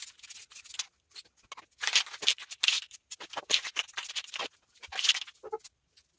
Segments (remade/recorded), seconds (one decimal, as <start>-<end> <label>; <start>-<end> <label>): 0.0-2.3 recorded; 2.3-6.2 remade